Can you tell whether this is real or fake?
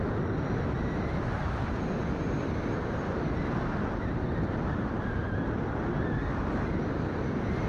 real